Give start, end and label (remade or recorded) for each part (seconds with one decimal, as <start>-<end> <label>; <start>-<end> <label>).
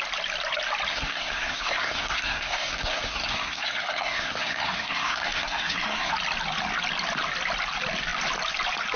0.0-0.9 recorded; 0.9-6.1 remade; 6.1-9.0 recorded